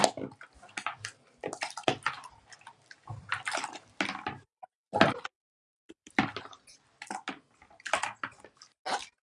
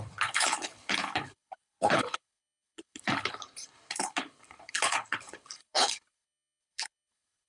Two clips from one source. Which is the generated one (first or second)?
second